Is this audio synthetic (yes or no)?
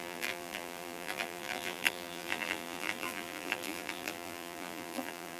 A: yes